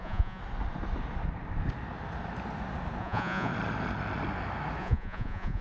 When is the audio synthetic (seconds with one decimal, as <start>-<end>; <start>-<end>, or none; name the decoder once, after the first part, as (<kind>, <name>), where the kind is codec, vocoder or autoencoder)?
0.0-0.4 (vocoder, Vocos); 3.0-3.5; 4.8-5.6